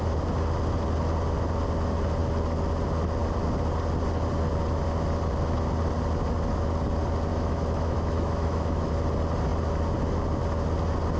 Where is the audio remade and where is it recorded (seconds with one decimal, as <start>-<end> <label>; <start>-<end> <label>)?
0.0-7.3 recorded; 7.3-8.9 remade; 8.9-11.2 recorded

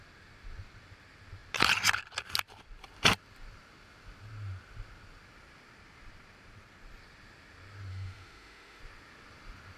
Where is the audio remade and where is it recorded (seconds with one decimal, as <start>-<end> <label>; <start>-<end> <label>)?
0.0-7.9 recorded; 7.9-8.8 remade; 8.8-9.8 recorded

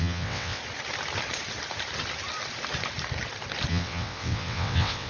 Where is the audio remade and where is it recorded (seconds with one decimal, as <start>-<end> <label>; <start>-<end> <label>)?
0.0-0.6 remade; 0.6-3.7 recorded; 3.7-5.1 remade

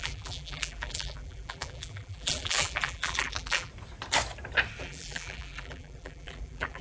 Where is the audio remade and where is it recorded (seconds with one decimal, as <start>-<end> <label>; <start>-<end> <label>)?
0.0-3.7 remade; 3.7-4.8 recorded; 4.8-6.8 remade